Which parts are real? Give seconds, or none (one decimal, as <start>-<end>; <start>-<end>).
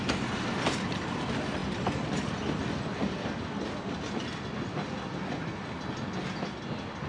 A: 0.0-7.1